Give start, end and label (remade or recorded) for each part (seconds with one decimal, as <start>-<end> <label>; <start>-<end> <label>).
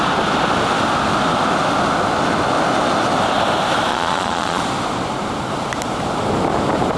0.0-3.9 recorded; 3.9-4.6 remade; 4.6-7.0 recorded